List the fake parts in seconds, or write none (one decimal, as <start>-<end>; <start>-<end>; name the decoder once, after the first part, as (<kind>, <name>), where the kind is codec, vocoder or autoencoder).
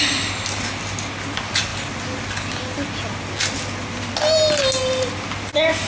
none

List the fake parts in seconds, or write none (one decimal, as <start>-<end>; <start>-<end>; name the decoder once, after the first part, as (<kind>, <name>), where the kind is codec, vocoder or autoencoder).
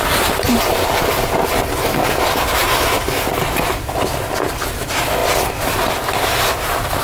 none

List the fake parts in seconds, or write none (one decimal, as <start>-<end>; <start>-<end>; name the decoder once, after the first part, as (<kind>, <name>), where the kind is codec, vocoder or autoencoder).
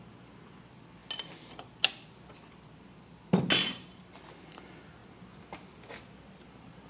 none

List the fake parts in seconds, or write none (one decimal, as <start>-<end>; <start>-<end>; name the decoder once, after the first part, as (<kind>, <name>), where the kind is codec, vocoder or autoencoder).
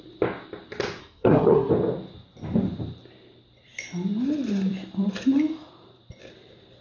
1.0-1.7 (codec, SNAC)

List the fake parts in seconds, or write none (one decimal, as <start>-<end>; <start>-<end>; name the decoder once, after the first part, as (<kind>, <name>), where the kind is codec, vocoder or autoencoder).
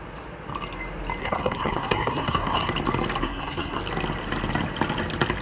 1.2-2.7 (codec, SNAC); 3.2-3.8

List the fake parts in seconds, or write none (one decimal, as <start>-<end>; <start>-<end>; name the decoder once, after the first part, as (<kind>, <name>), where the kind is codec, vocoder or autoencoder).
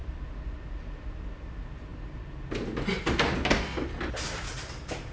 none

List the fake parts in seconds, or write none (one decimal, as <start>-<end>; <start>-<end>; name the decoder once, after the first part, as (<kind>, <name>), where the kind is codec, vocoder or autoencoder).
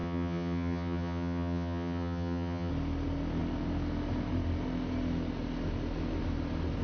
0.0-2.7 (vocoder, HiFi-GAN)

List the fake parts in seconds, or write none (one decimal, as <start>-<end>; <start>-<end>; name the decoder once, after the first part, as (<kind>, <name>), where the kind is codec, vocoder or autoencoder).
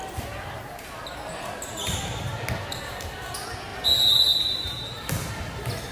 none